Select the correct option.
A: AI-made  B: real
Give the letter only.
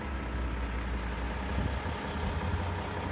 B